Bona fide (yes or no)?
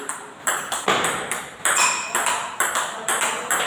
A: no